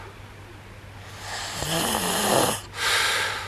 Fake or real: real